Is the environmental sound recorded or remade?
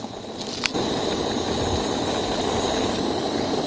recorded